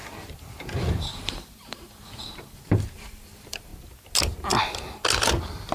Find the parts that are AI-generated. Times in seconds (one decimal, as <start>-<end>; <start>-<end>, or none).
0.8-3.7; 5.2-5.7